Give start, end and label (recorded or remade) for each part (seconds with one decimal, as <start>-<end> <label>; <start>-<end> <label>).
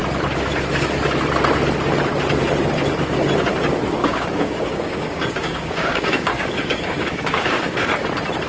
0.0-4.0 recorded; 4.0-7.9 remade; 7.9-8.5 recorded